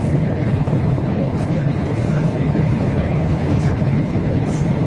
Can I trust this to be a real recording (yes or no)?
no